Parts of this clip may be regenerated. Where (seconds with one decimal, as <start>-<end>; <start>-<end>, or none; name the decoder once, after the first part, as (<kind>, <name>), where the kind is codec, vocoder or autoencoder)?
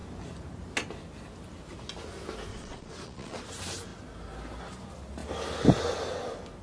2.5-3.4 (vocoder, Vocos)